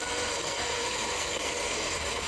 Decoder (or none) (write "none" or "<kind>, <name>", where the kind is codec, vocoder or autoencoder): codec, SNAC